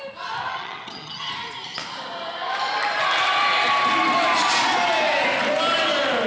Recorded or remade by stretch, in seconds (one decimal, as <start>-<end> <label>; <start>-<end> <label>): 0.0-0.5 recorded; 0.5-1.3 remade; 1.3-6.3 recorded